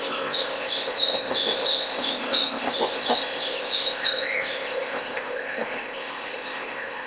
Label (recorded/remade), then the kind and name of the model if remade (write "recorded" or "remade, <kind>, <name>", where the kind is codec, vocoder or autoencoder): remade, codec, ZipCodec